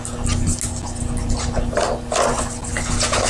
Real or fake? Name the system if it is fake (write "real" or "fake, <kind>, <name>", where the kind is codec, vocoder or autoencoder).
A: real